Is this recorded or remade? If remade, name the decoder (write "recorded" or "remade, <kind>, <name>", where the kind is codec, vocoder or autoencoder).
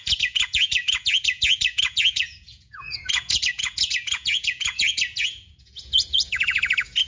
remade, vocoder, Vocos